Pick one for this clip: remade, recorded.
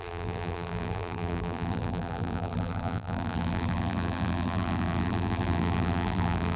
remade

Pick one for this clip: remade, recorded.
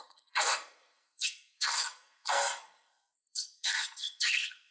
remade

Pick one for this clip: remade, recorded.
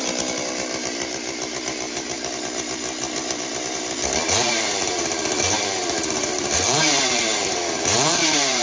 remade